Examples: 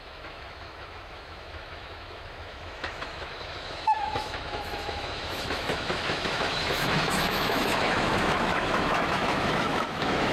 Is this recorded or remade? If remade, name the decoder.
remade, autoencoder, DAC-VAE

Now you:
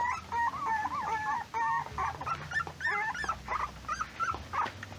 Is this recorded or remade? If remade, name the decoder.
recorded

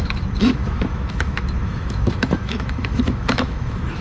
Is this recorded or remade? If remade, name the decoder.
remade, autoencoder, DAC-VAE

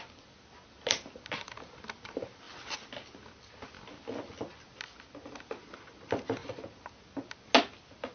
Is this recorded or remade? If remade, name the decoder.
recorded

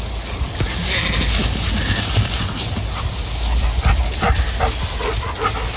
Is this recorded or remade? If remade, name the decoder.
recorded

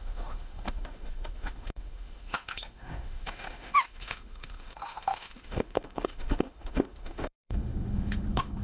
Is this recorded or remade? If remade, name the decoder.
remade, autoencoder, DAC-VAE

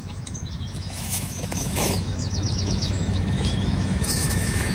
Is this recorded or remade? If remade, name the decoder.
remade, autoencoder, DAC-VAE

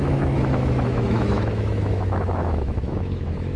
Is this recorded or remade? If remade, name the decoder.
remade, autoencoder, DAC-VAE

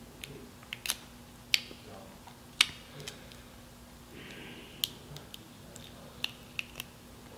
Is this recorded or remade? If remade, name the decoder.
recorded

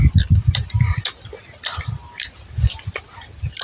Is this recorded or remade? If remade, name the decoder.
recorded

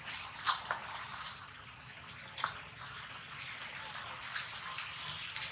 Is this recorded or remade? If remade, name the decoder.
recorded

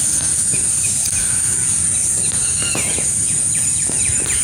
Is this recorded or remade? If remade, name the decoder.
recorded